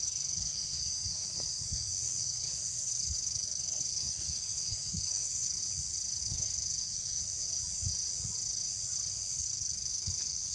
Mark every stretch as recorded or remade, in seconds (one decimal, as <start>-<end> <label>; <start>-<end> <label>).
0.0-5.6 remade; 5.6-6.2 recorded; 6.2-7.5 remade; 7.5-9.1 recorded; 9.1-10.5 remade